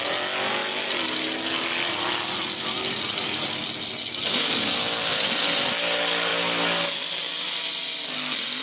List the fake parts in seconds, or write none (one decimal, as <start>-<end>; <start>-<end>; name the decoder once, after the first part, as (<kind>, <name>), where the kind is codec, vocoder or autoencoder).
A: none